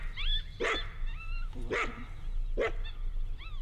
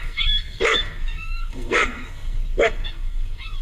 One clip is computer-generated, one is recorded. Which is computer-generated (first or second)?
second